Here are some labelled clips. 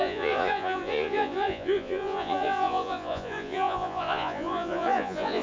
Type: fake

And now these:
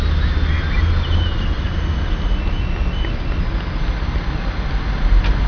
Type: real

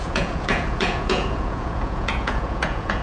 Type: fake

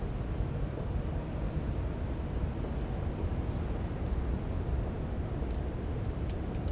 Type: real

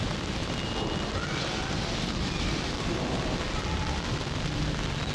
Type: real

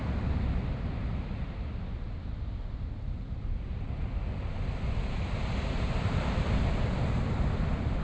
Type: real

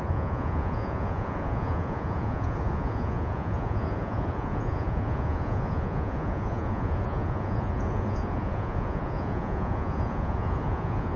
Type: fake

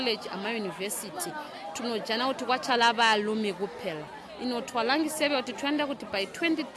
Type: real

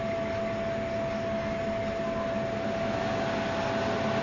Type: real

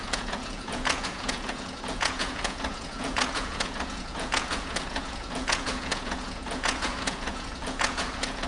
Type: fake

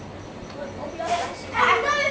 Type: real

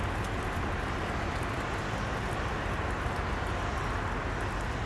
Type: real